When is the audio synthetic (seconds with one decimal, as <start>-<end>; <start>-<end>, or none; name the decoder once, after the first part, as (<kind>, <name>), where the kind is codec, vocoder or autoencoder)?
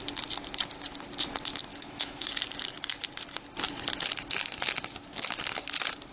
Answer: 1.7-2.3 (autoencoder, DAC-VAE)